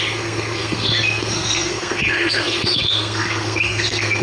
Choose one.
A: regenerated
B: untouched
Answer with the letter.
A